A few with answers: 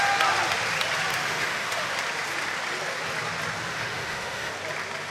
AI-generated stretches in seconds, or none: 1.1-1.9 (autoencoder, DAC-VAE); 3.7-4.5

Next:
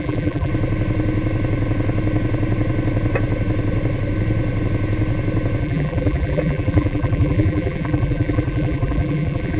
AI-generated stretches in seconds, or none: 0.0-0.5 (vocoder, BigVGAN v2); 5.6-9.6

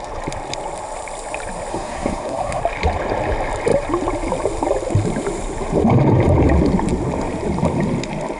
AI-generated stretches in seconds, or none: 1.7-2.6 (codec, SNAC)